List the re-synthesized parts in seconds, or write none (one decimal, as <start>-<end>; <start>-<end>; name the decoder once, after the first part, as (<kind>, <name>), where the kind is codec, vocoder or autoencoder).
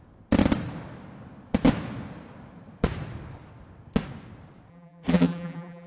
4.7-5.9 (vocoder, BigVGAN v2)